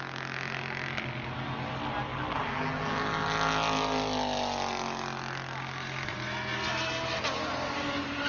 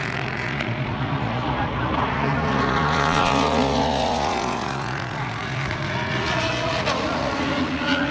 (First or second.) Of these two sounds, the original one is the first